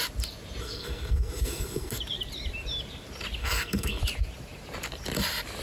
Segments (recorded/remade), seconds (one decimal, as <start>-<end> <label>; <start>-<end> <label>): 0.0-0.6 recorded; 0.6-2.0 remade; 2.0-3.4 recorded; 3.4-4.0 remade; 4.0-5.6 recorded